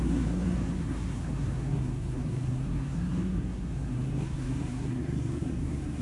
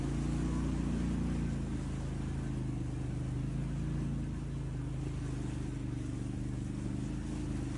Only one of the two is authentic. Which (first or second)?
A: second